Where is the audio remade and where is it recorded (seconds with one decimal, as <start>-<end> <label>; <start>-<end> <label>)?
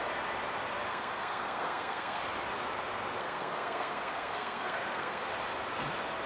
0.0-0.9 recorded; 0.9-2.2 remade; 2.2-3.2 recorded; 3.2-5.3 remade; 5.3-6.3 recorded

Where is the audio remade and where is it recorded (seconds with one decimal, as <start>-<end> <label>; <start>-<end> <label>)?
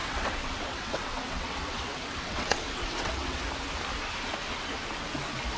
0.0-3.4 remade; 3.4-5.6 recorded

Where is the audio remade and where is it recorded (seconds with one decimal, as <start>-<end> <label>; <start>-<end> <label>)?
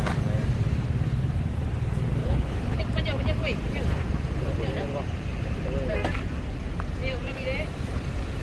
0.0-2.2 recorded; 2.2-2.8 remade; 2.8-8.4 recorded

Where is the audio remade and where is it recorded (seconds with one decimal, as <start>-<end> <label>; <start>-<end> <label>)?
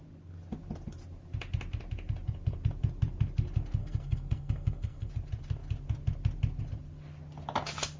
0.0-3.8 recorded; 3.8-5.1 remade; 5.1-8.0 recorded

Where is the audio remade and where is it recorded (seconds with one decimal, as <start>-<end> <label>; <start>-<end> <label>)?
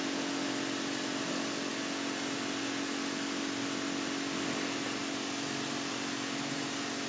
0.0-7.1 recorded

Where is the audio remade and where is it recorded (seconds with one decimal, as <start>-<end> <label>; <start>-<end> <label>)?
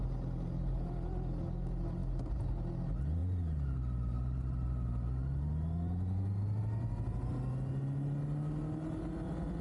0.0-9.6 recorded